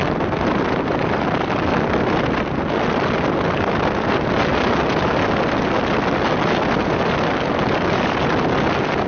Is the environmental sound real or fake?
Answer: real